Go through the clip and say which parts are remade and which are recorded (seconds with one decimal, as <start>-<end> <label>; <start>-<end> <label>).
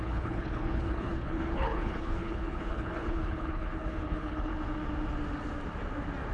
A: 0.0-4.5 remade; 4.5-6.3 recorded